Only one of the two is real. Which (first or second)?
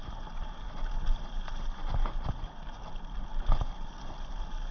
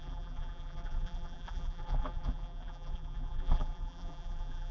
first